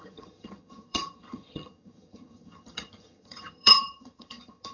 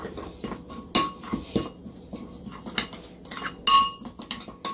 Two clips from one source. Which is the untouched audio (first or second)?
second